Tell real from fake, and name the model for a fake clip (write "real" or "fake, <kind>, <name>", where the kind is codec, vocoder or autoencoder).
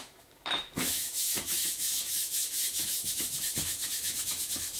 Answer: fake, autoencoder, DAC-VAE